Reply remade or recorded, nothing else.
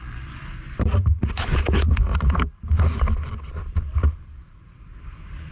recorded